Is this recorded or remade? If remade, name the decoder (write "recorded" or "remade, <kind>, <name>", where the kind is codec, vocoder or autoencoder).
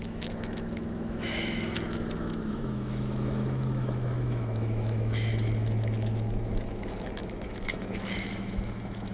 remade, autoencoder, DAC-VAE